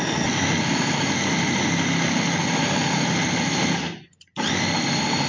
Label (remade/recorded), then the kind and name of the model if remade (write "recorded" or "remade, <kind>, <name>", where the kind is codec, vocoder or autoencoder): recorded